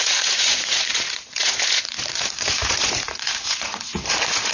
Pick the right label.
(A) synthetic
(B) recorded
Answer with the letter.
A